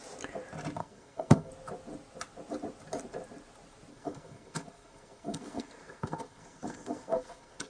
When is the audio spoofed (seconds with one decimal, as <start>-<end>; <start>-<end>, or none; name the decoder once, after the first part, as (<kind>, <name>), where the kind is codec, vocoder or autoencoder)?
0.8-1.5 (codec, SNAC); 3.9-7.7